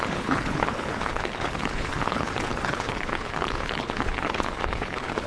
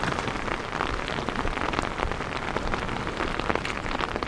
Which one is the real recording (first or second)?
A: second